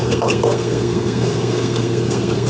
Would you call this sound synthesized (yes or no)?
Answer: yes